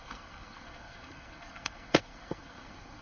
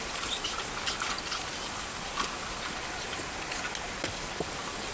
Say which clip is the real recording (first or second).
second